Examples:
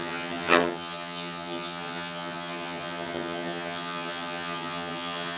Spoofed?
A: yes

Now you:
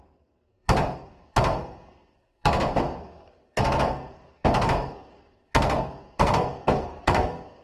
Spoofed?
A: yes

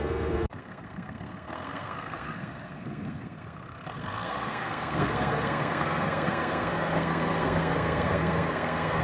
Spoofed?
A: yes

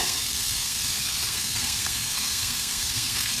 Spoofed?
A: yes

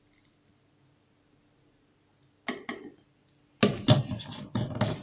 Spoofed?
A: no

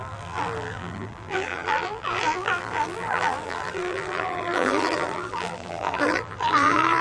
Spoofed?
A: yes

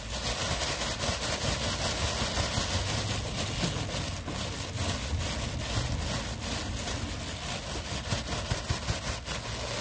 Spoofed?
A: no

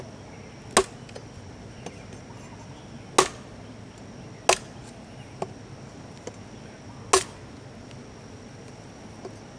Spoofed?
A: no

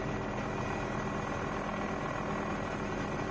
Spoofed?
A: no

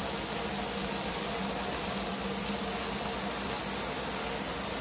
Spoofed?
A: no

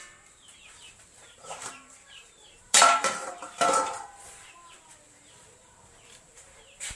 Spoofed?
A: yes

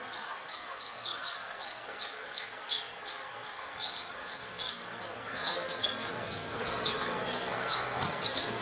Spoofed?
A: yes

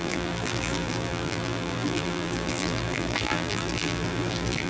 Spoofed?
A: yes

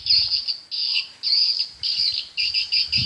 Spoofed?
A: no